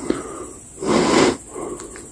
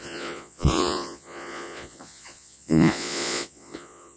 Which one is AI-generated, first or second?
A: second